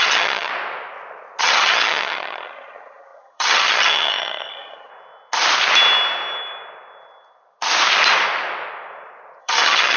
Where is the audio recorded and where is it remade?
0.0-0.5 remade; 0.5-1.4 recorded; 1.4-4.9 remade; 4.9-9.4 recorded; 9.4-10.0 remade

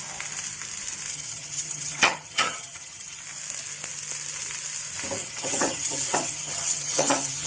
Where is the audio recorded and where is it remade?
0.0-1.1 recorded; 1.1-3.2 remade; 3.2-5.2 recorded; 5.2-7.5 remade

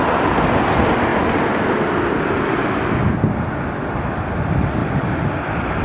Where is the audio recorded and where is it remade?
0.0-5.8 recorded

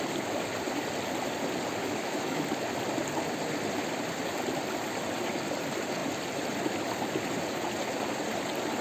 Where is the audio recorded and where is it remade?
0.0-1.8 recorded; 1.8-2.4 remade; 2.4-8.8 recorded

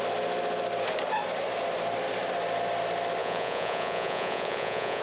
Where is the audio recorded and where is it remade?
0.0-3.2 recorded; 3.2-5.0 remade

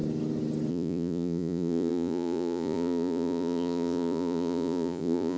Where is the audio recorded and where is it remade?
0.0-0.7 recorded; 0.7-5.4 remade

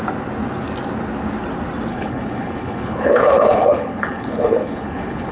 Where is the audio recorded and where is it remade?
0.0-1.9 recorded; 1.9-5.3 remade

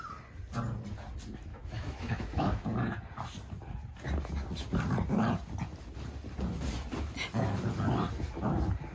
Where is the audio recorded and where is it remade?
0.0-1.5 recorded; 1.5-2.6 remade; 2.6-8.9 recorded